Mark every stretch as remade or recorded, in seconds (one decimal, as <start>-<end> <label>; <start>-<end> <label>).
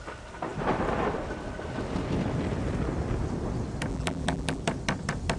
0.0-3.9 recorded; 3.9-4.6 remade; 4.6-5.4 recorded